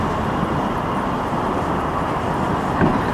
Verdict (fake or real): real